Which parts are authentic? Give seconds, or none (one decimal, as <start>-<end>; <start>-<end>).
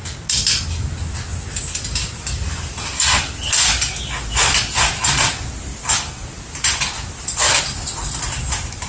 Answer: 0.0-5.7; 7.6-8.9